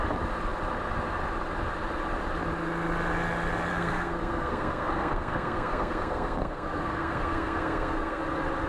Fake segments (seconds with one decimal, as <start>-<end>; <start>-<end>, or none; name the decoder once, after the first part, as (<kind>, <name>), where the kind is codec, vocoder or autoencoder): 3.7-8.2 (codec, SNAC)